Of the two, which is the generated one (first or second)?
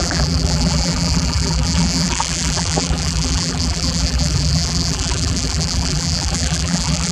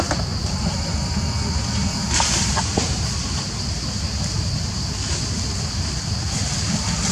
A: first